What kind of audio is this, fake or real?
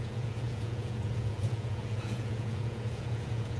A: fake